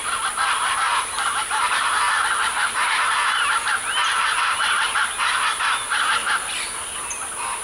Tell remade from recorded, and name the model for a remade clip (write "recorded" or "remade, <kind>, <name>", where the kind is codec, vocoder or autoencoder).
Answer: recorded